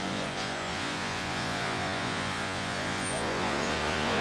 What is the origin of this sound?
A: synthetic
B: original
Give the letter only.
A